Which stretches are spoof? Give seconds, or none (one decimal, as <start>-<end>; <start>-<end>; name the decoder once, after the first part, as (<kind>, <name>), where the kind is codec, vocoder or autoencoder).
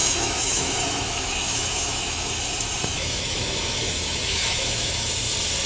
0.0-2.3 (autoencoder, DAC-VAE); 2.9-5.1